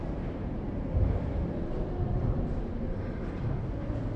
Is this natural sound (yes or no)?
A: yes